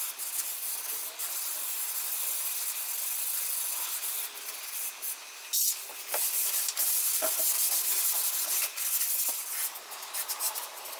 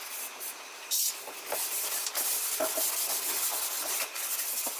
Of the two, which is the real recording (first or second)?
first